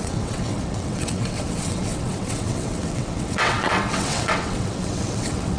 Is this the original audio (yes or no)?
no